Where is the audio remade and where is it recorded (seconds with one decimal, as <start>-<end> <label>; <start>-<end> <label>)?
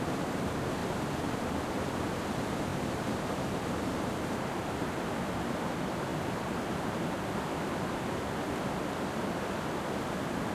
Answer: 0.0-2.7 recorded; 2.7-5.5 remade; 5.5-6.1 recorded; 6.1-6.9 remade; 6.9-10.5 recorded